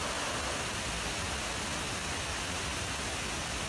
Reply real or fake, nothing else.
real